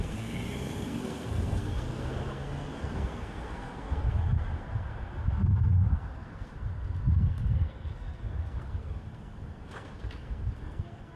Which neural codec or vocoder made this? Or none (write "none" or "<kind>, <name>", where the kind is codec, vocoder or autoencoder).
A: codec, SNAC